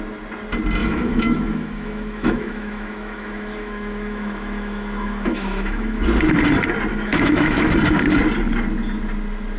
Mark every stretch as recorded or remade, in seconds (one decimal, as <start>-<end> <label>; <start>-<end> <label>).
0.0-0.8 recorded; 0.8-6.0 remade; 6.0-6.9 recorded; 6.9-7.7 remade; 7.7-9.6 recorded